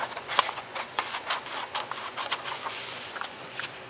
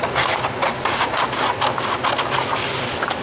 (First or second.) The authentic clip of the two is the second